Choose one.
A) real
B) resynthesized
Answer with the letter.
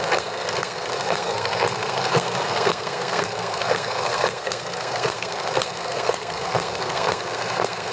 B